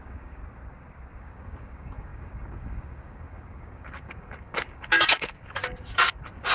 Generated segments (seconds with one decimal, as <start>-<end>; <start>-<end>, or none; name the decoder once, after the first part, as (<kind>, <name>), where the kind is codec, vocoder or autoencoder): 0.0-0.4 (codec, DAC); 1.2-6.5